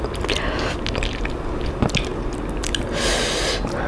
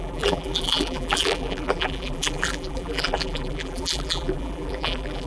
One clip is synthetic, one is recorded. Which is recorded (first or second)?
first